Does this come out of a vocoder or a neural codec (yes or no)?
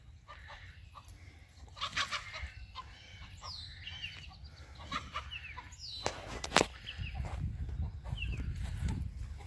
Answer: no